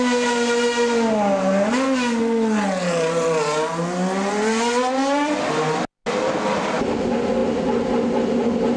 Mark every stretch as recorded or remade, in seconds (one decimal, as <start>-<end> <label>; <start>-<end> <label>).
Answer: 0.0-8.8 recorded

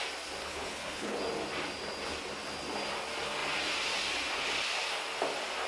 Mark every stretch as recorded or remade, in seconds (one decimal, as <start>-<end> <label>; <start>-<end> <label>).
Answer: 0.0-0.4 recorded; 0.4-1.2 remade; 1.2-5.7 recorded

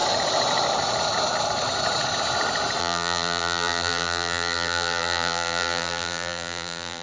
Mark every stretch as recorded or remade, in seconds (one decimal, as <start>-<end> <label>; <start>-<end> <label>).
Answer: 0.0-2.8 recorded; 2.8-7.0 remade

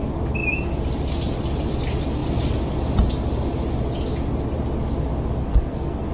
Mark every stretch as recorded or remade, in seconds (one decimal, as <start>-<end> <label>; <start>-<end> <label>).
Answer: 0.0-5.4 recorded; 5.4-6.1 remade

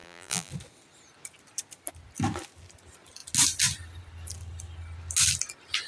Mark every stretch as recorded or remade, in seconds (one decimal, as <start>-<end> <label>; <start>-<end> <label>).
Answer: 0.0-0.5 remade; 0.5-5.9 recorded

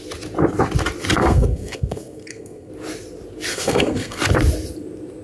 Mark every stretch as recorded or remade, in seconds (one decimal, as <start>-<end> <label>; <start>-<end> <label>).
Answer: 0.0-1.2 recorded; 1.2-2.7 remade; 2.7-3.5 recorded; 3.5-4.2 remade; 4.2-5.2 recorded

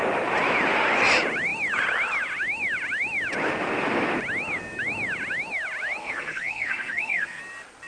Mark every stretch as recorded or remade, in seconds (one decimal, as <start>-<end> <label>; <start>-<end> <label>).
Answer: 0.0-6.0 recorded; 6.0-7.4 remade; 7.4-7.9 recorded